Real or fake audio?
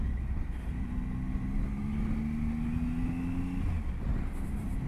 real